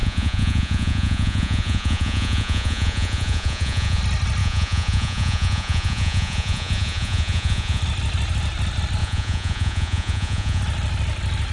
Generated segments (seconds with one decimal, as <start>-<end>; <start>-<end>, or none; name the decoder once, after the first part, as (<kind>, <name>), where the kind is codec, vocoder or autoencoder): 0.0-4.0 (vocoder, Vocos); 4.4-7.8; 9.0-10.6